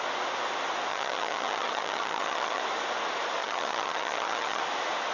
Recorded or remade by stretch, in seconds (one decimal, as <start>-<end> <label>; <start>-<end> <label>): 0.0-0.9 recorded; 0.9-2.6 remade; 2.6-3.4 recorded; 3.4-4.6 remade; 4.6-5.1 recorded